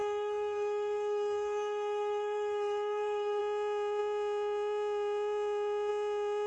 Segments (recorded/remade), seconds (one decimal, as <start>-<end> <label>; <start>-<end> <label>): 0.0-3.4 remade; 3.4-6.5 recorded